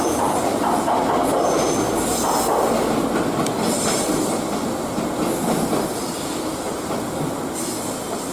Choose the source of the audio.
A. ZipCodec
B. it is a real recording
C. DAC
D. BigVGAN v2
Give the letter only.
B